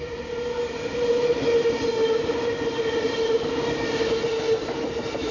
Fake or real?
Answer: real